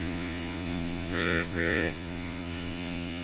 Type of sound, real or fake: fake